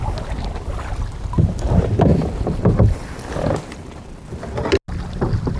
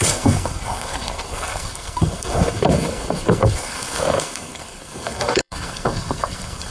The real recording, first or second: first